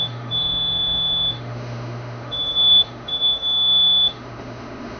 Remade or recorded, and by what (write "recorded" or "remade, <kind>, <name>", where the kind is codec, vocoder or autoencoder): remade, autoencoder, DAC-VAE